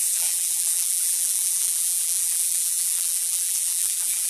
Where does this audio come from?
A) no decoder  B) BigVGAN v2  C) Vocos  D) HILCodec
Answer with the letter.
B